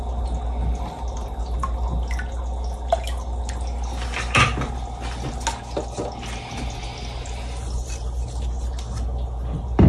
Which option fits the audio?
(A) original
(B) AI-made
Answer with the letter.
A